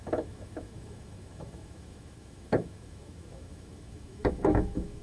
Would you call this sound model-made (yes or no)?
yes